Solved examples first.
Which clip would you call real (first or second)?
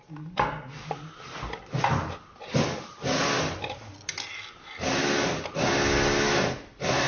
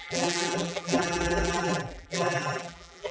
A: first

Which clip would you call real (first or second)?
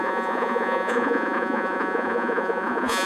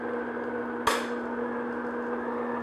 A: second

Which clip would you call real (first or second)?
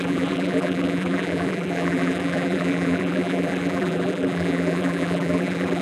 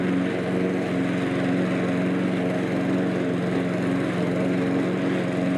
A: second